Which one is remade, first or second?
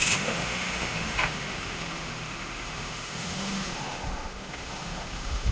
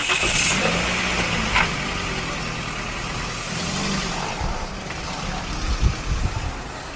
first